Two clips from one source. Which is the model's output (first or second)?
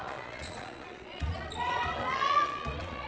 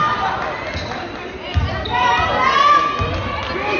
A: first